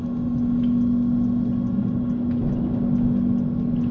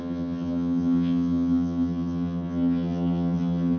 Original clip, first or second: first